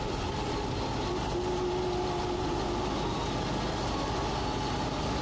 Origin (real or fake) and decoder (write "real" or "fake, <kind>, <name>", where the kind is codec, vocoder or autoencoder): real